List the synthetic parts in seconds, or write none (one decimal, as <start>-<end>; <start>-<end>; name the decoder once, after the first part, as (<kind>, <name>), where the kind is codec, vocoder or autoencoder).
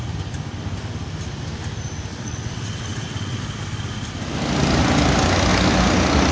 2.1-3.4 (vocoder, WaveNeXt)